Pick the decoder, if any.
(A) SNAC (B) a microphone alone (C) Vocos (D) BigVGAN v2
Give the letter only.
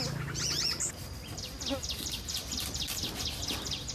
B